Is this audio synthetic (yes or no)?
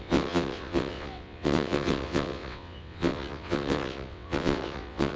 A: yes